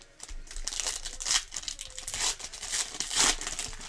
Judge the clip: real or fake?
real